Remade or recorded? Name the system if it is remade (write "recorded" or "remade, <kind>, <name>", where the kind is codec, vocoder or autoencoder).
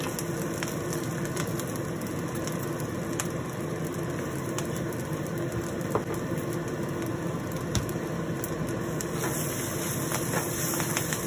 recorded